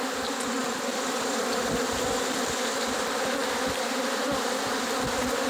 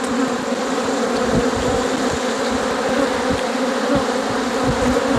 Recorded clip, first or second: second